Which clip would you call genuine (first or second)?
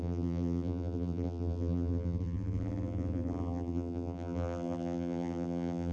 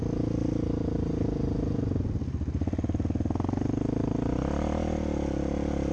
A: second